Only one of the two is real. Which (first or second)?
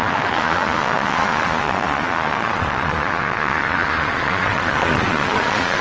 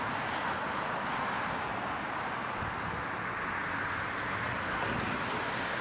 second